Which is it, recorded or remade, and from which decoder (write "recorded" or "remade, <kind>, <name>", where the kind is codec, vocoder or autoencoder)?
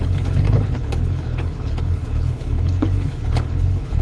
remade, codec, HILCodec